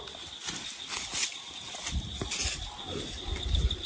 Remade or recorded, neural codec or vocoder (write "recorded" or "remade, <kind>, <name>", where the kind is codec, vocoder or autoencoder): recorded